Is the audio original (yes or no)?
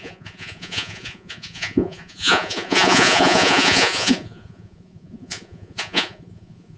no